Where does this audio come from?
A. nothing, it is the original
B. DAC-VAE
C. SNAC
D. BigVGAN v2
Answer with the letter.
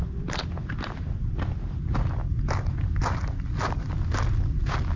A